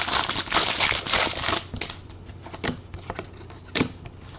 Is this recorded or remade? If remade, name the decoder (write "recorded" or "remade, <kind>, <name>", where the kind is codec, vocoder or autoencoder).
recorded